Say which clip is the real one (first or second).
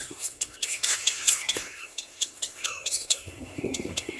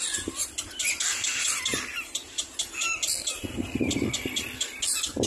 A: second